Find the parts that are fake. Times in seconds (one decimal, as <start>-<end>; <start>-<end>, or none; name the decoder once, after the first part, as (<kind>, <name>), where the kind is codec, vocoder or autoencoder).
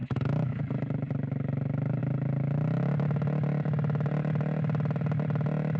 0.0-0.6 (autoencoder, DAC-VAE)